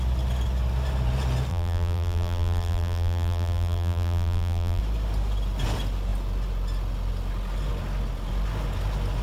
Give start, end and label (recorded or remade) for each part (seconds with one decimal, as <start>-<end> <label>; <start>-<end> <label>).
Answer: 0.0-1.5 recorded; 1.5-4.8 remade; 4.8-9.2 recorded